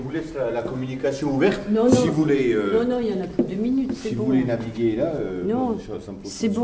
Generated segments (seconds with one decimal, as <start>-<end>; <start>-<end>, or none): none